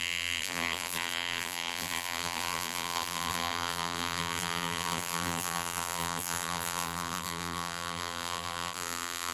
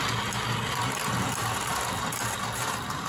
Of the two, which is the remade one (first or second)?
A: first